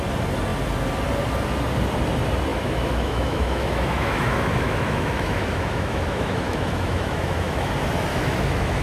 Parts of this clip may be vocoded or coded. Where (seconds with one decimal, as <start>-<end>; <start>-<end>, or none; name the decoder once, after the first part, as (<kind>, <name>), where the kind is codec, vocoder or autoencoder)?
2.5-7.7 (autoencoder, DAC-VAE); 8.1-8.8